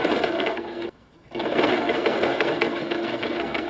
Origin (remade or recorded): remade